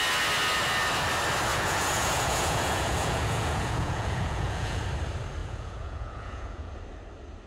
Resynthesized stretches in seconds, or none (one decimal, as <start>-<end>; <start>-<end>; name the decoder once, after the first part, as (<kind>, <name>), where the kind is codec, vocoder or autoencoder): 1.5-4.8 (vocoder, Vocos); 5.4-6.7